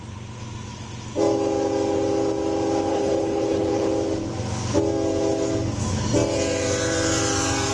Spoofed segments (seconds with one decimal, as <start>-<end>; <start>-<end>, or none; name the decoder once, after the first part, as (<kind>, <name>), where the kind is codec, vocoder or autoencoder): 2.9-3.9 (codec, HILCodec)